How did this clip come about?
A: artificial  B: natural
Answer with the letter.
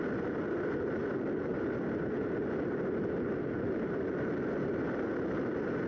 B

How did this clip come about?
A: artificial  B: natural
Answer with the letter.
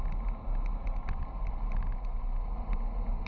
B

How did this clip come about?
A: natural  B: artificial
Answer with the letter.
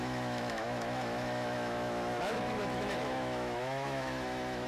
B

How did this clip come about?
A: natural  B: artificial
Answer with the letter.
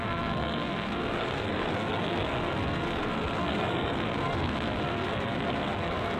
B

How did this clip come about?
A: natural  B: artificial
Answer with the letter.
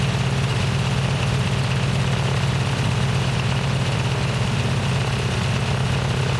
A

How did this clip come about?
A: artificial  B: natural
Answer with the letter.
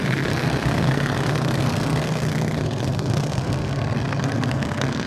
A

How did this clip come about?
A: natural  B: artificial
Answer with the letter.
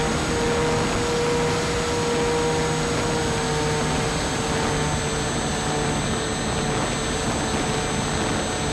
A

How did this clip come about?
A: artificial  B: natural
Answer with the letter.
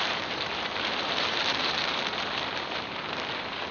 A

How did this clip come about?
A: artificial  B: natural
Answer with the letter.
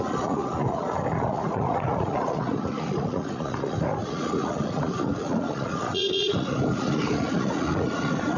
A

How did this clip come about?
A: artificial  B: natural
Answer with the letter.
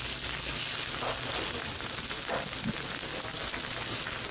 B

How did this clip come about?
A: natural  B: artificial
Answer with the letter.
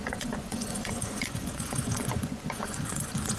B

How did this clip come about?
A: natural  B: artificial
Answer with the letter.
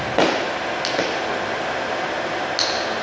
A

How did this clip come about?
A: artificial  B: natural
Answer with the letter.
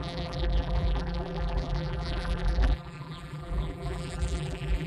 A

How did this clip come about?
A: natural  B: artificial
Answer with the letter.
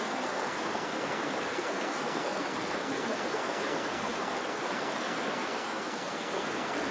B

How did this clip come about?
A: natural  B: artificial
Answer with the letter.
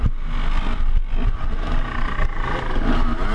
A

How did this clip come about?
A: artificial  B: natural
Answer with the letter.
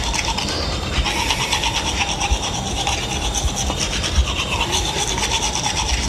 B